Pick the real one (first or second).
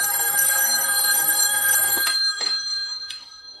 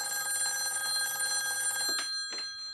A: second